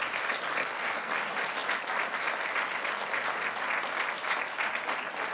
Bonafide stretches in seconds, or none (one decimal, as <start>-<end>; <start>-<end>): 0.0-0.6; 1.2-5.3